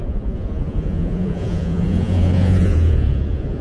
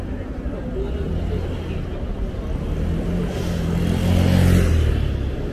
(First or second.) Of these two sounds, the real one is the second